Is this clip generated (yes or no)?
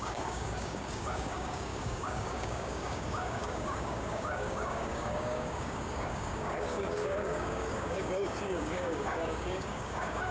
yes